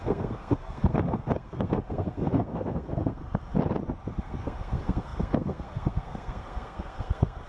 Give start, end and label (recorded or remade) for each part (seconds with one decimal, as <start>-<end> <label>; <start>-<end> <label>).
0.0-3.2 remade; 3.2-4.2 recorded; 4.2-7.5 remade